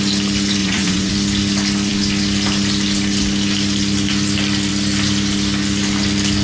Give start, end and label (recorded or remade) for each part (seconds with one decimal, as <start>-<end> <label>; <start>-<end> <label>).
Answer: 0.0-0.6 recorded; 0.6-1.1 remade; 1.1-6.4 recorded